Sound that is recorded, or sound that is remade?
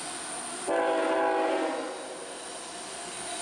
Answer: recorded